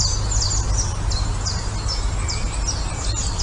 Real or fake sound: real